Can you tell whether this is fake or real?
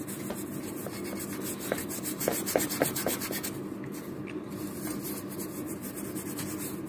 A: real